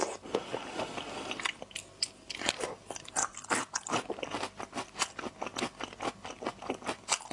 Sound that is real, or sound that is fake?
real